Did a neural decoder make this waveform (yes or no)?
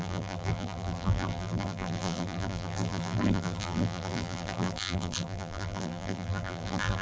yes